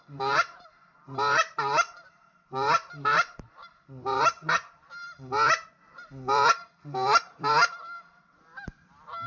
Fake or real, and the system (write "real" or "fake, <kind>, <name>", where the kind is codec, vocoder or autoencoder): fake, vocoder, BigVGAN v2